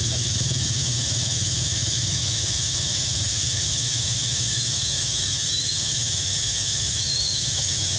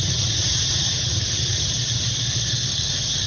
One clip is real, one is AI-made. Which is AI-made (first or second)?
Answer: first